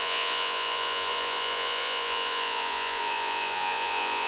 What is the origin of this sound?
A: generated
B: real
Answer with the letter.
A